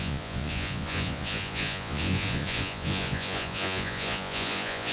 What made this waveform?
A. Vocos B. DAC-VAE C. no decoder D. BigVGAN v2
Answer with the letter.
A